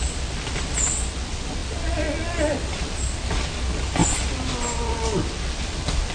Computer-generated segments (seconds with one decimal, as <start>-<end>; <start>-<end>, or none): none